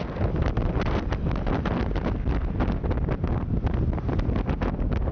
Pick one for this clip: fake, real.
real